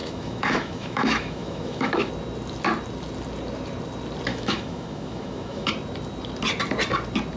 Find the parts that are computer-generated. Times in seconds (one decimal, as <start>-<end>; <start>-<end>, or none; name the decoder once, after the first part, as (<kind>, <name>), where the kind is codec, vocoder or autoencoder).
0.0-2.1 (autoencoder, DAC-VAE); 4.3-5.7

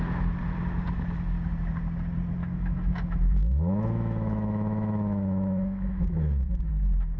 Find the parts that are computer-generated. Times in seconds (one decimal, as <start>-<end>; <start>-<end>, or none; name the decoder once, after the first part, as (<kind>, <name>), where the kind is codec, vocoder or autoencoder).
2.4-6.7 (autoencoder, DAC-VAE)

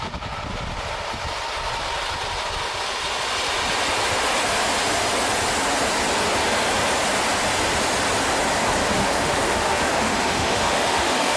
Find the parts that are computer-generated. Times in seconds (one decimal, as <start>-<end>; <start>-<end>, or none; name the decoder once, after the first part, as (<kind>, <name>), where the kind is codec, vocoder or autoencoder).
8.8-11.4 (autoencoder, DAC-VAE)

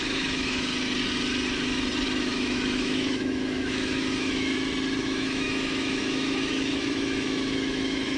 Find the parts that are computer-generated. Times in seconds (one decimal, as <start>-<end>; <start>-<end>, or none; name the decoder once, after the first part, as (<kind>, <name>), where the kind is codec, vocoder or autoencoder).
0.0-0.7 (autoencoder, DAC-VAE); 2.2-4.5; 5.0-8.2

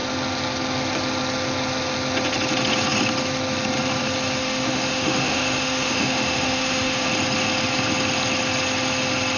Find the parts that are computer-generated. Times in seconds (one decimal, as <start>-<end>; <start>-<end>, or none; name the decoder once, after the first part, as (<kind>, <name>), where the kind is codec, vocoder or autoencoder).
4.4-7.1 (autoencoder, DAC-VAE)